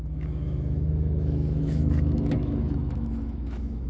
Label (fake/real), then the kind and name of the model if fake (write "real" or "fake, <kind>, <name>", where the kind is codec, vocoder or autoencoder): fake, autoencoder, DAC-VAE